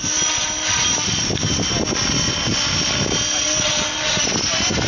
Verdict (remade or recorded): recorded